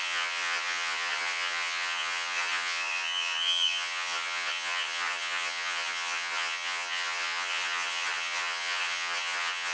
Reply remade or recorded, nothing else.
remade